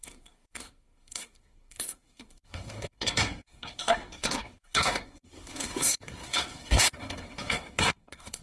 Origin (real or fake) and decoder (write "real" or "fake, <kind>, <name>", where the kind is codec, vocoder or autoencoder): fake, codec, SNAC